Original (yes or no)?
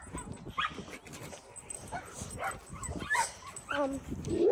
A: yes